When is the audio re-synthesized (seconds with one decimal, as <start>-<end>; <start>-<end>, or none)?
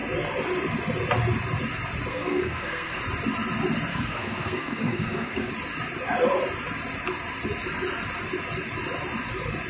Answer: 2.1-3.0; 3.9-5.5